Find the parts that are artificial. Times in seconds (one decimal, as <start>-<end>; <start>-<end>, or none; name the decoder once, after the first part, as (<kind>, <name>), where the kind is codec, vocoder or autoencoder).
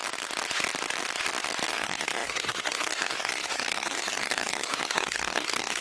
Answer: 1.7-5.8 (codec, SNAC)